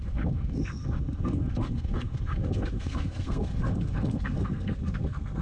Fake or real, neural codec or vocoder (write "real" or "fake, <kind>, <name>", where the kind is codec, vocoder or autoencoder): fake, codec, SNAC